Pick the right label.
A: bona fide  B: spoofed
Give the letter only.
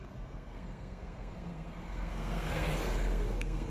B